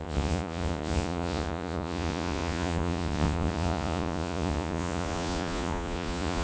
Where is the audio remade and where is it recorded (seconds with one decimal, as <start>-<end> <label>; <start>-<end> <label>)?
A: 0.0-6.4 remade